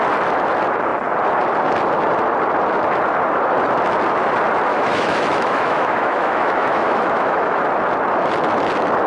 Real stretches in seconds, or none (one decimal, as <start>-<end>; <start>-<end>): 0.0-4.7; 7.6-9.1